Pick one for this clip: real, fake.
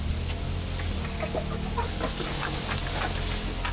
real